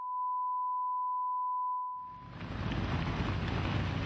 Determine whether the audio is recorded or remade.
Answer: recorded